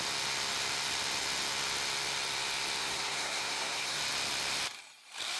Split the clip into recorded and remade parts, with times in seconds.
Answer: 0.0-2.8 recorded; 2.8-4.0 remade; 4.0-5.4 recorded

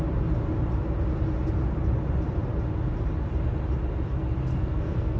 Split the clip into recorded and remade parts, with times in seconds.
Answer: 0.0-4.5 recorded; 4.5-5.2 remade

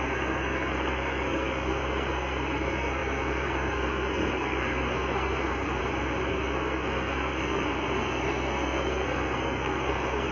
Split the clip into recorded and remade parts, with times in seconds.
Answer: 0.0-5.8 remade; 5.8-6.3 recorded; 6.3-10.3 remade